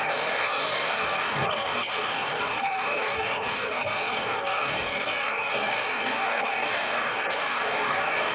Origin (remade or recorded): remade